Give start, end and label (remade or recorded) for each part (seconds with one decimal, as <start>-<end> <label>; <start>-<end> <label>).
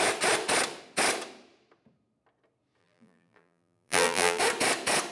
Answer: 0.0-2.8 recorded; 2.8-4.4 remade; 4.4-5.1 recorded